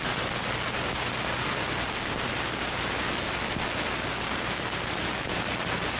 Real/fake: real